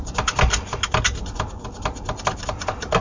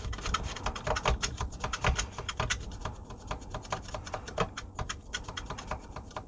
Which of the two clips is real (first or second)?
first